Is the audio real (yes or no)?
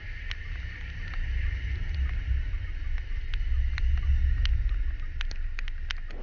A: yes